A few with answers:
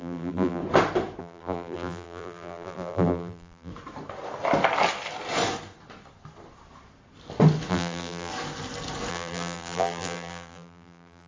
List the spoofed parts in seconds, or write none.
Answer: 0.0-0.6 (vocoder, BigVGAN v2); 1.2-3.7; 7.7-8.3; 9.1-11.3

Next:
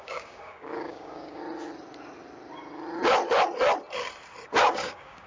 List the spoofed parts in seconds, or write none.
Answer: 0.0-1.4 (codec, DAC); 4.6-5.3